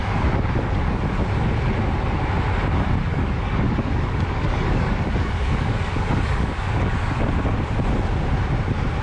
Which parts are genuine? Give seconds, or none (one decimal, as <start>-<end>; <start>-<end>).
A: 1.0-3.1; 7.2-9.0